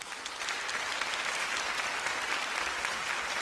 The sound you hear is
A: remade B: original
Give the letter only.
B